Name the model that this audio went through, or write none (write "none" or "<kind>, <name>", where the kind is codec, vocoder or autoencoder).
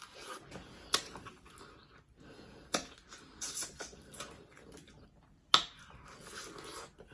none